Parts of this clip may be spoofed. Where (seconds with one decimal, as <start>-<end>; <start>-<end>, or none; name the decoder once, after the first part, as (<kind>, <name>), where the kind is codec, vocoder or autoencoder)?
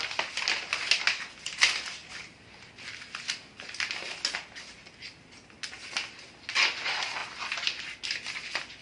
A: none